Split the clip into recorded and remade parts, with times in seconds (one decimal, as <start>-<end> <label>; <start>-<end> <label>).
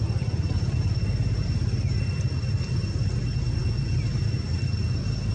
0.0-5.3 recorded